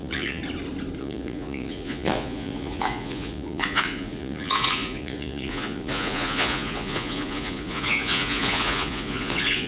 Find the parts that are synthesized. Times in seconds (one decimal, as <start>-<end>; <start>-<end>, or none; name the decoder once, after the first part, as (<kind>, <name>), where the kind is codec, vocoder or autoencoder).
0.0-0.4 (vocoder, Vocos); 1.0-9.7